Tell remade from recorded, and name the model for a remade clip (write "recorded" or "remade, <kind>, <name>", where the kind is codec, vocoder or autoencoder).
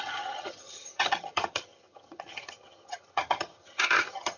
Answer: remade, vocoder, HiFi-GAN